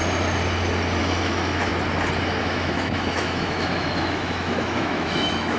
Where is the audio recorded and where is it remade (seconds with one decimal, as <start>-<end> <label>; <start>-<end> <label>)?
0.0-1.0 recorded; 1.0-1.7 remade; 1.7-2.4 recorded; 2.4-5.6 remade